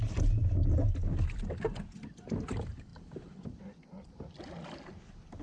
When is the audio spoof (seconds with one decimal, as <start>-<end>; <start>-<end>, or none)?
none

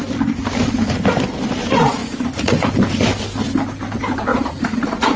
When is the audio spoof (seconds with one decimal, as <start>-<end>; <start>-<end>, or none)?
2.0-2.7; 4.3-5.2

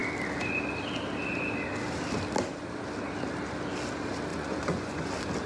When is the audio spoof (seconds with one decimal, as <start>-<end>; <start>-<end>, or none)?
4.3-5.1

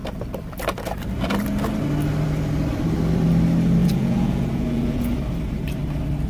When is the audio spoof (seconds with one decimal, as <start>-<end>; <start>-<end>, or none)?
3.8-5.2

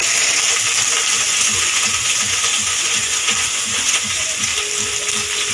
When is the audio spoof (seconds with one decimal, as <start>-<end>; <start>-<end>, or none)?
1.1-4.5